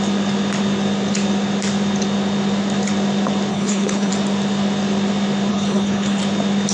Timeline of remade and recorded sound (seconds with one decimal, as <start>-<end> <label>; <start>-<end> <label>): 0.0-3.5 recorded; 3.5-4.1 remade; 4.1-5.5 recorded; 5.5-6.2 remade; 6.2-6.7 recorded